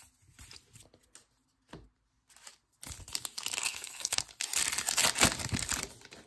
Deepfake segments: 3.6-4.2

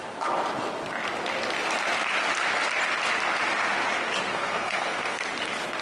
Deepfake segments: 4.3-5.2

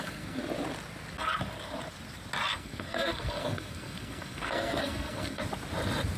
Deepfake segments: 0.0-0.4; 2.5-5.4

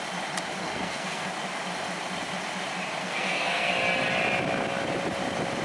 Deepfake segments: 0.6-1.3; 3.0-3.7

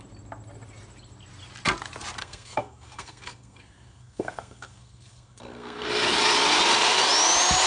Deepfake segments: 2.2-5.9

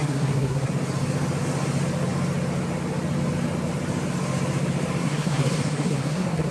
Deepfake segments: 0.0-0.7; 5.0-6.5